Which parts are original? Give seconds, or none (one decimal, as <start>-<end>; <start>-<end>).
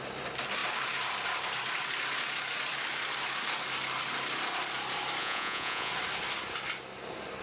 0.0-5.2; 5.9-7.4